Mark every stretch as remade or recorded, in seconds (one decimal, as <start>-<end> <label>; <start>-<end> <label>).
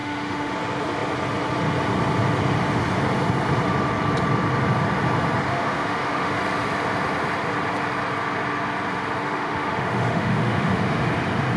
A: 0.0-0.5 remade; 0.5-5.5 recorded; 5.5-6.4 remade; 6.4-9.2 recorded; 9.2-11.1 remade; 11.1-11.6 recorded